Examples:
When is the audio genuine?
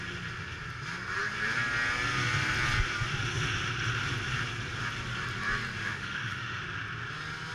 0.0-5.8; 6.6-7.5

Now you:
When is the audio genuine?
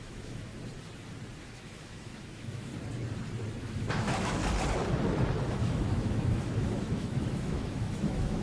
0.5-1.4; 2.7-3.6; 4.4-5.5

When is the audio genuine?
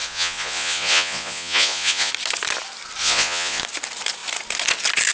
2.1-3.0; 3.6-5.1